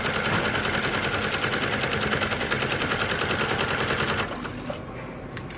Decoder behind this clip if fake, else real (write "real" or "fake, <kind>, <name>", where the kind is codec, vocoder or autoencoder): real